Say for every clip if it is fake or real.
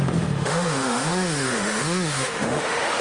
fake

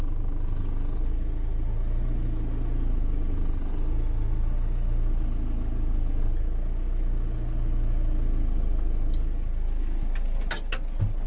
real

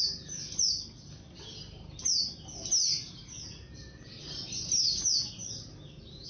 real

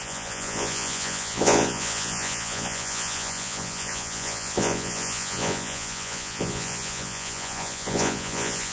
fake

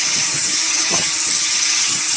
fake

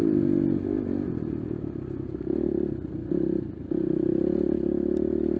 real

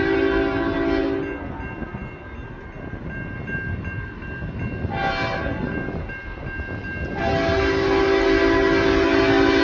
real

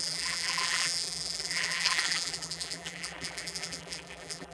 fake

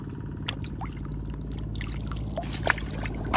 real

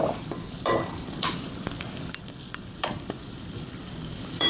fake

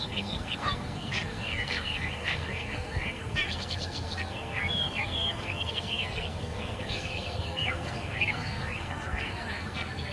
fake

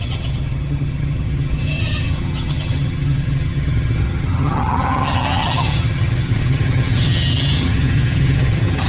fake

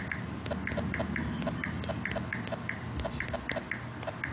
real